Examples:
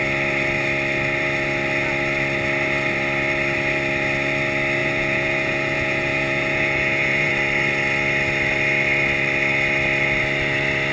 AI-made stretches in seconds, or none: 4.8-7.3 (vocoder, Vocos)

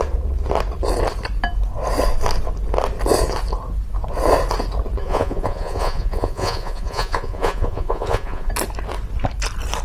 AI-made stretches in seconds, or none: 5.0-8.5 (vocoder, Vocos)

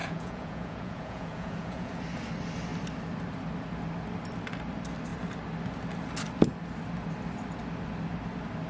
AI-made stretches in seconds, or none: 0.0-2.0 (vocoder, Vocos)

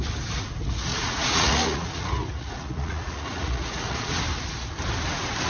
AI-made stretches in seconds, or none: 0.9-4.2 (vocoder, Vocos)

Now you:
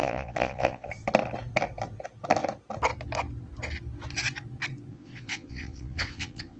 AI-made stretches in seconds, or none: 0.0-0.9 (vocoder, Vocos); 4.9-6.6

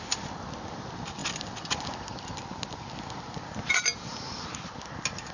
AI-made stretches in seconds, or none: none

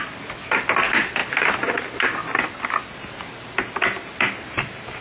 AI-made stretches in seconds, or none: none

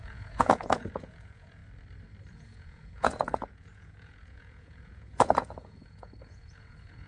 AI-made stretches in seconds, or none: 0.0-1.6 (vocoder, Vocos); 2.3-7.1